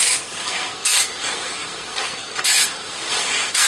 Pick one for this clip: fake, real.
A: fake